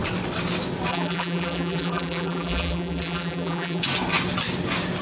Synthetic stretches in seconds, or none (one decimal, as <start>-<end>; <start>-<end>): 0.9-3.8